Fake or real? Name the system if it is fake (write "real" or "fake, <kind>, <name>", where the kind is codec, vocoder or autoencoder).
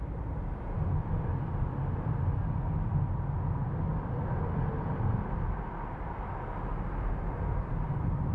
real